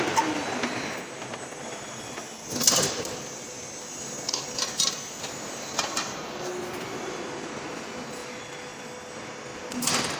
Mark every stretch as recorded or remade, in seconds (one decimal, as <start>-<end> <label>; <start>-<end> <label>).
0.0-10.2 recorded